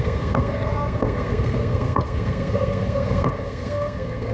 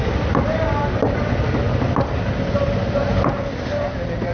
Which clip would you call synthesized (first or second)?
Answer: first